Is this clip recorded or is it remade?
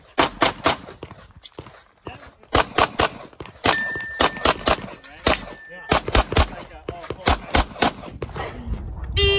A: recorded